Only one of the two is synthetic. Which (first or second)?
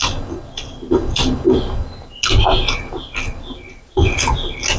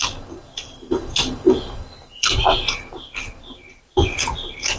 second